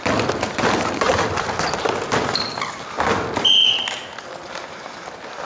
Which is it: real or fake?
real